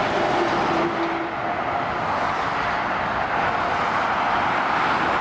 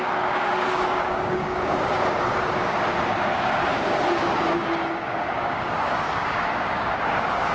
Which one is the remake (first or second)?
second